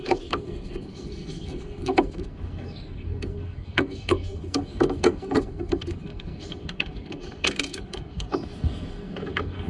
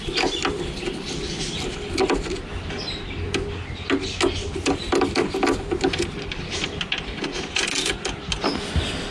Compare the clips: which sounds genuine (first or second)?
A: second